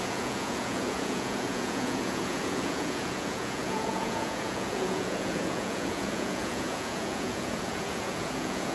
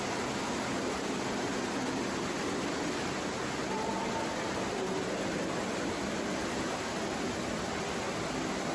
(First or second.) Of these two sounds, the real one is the second